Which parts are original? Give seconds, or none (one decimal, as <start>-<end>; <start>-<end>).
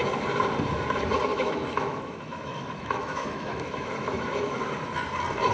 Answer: 0.0-1.3; 4.6-5.5